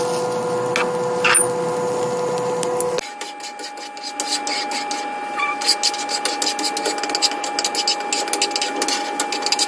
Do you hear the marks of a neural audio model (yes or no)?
no